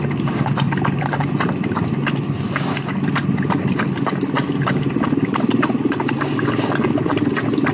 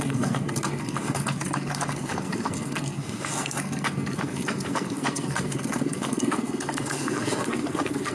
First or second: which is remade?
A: second